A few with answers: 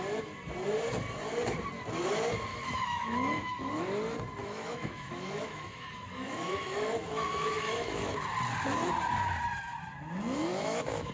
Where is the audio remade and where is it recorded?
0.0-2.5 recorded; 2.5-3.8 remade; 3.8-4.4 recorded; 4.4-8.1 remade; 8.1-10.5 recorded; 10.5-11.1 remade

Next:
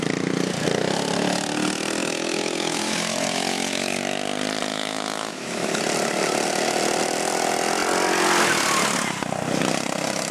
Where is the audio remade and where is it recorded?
0.0-2.0 recorded; 2.0-4.0 remade; 4.0-4.7 recorded; 4.7-5.8 remade; 5.8-10.3 recorded